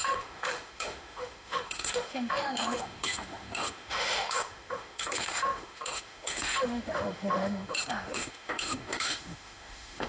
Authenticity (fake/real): fake